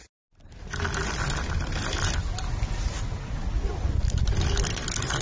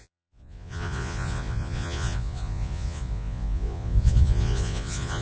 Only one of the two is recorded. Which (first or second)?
first